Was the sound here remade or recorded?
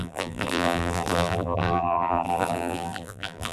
remade